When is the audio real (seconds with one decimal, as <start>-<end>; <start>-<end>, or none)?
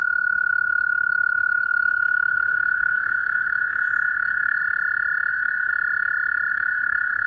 4.6-5.3; 5.7-6.5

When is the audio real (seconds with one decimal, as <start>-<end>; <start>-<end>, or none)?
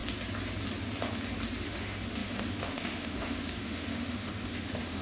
0.0-1.6